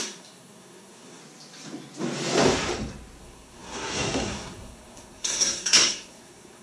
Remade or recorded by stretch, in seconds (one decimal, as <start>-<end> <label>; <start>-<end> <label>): 0.0-1.2 remade; 1.2-3.2 recorded; 3.2-6.6 remade